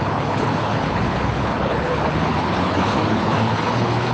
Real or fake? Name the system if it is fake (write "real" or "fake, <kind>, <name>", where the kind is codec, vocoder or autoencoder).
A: fake, codec, HILCodec